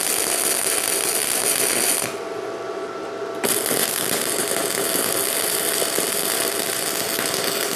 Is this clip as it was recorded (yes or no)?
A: yes